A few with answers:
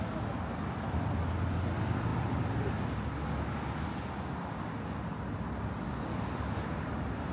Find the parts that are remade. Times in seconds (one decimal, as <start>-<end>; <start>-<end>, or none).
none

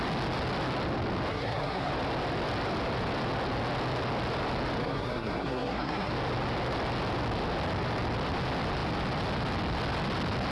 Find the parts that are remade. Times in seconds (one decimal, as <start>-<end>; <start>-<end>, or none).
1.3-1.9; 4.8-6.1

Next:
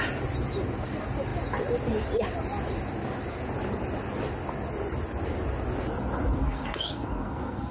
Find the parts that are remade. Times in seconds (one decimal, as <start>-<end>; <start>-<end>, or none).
6.4-7.7